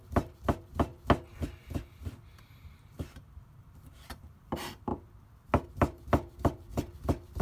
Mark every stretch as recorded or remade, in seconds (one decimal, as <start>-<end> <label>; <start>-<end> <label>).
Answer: 0.0-0.9 remade; 0.9-2.4 recorded; 2.4-4.9 remade; 4.9-5.7 recorded; 5.7-6.7 remade; 6.7-7.4 recorded